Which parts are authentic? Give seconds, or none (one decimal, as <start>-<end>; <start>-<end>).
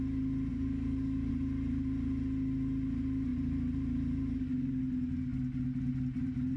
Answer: 0.0-0.5; 1.3-6.6